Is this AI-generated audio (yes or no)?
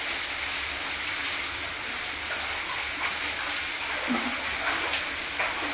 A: no